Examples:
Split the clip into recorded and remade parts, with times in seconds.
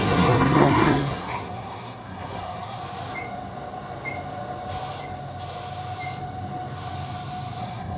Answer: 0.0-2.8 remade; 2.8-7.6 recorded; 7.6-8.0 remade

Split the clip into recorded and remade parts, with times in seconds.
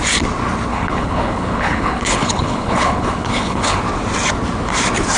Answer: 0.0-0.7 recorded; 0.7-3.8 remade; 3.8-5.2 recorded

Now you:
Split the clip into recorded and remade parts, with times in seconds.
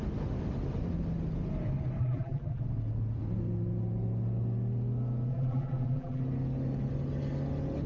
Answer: 0.0-2.0 recorded; 2.0-2.6 remade; 2.6-5.3 recorded; 5.3-6.2 remade; 6.2-7.9 recorded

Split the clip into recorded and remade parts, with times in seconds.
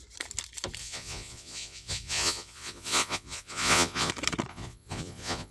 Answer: 0.0-0.8 recorded; 0.8-4.1 remade; 4.1-4.5 recorded; 4.5-5.5 remade